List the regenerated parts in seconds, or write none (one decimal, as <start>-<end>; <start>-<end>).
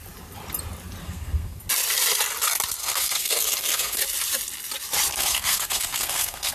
1.0-1.6; 2.8-4.0; 5.1-6.5